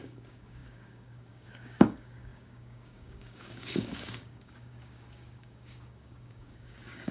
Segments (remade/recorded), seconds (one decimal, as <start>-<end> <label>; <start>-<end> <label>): 0.0-7.1 remade